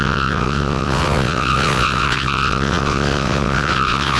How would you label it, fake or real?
fake